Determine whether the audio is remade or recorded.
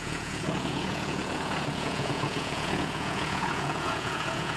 remade